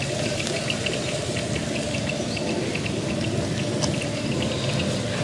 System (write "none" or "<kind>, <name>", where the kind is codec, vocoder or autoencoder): none